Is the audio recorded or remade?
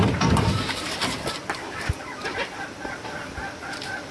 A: remade